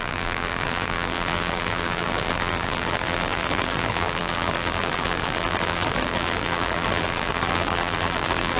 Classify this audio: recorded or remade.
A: remade